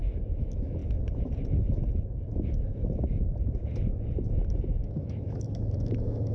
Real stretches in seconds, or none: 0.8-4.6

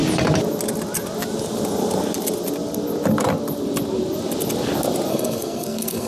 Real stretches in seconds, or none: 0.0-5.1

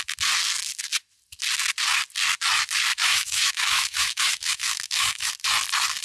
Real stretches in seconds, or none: 0.0-2.9; 5.3-6.0